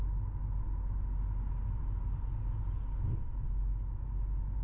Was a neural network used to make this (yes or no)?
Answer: no